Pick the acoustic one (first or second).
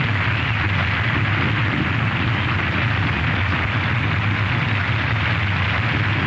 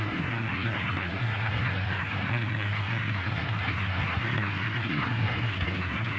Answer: first